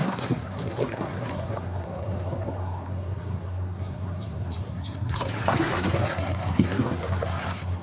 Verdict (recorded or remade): remade